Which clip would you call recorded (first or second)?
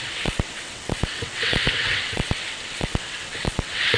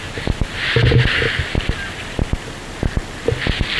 second